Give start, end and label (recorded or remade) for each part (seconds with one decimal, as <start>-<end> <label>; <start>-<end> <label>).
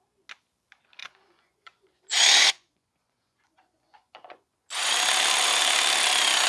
0.0-1.0 recorded; 1.0-4.9 remade; 4.9-6.5 recorded